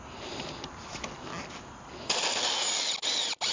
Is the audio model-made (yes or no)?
no